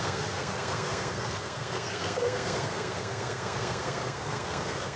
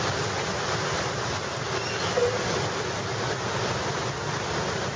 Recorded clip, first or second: second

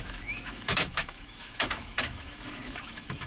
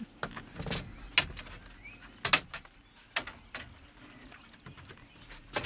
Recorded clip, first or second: second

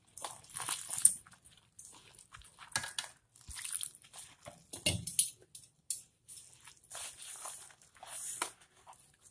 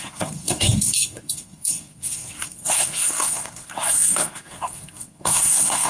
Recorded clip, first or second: first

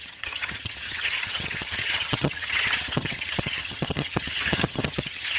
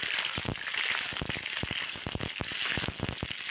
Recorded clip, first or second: second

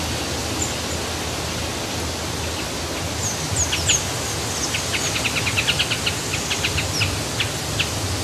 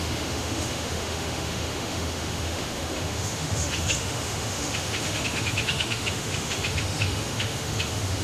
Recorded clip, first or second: first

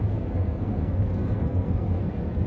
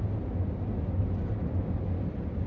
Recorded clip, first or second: second